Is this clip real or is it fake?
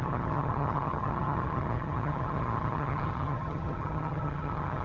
fake